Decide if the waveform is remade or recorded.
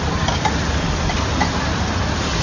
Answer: recorded